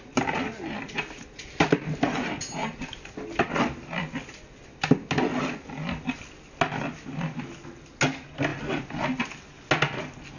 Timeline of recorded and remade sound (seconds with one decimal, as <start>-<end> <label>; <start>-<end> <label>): 0.0-10.4 recorded